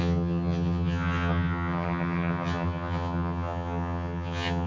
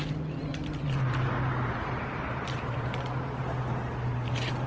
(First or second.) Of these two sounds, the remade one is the first